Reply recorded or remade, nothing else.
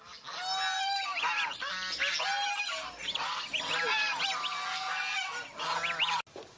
recorded